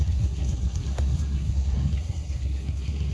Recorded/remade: remade